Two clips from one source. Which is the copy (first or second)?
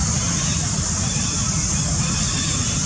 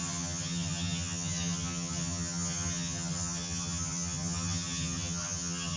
second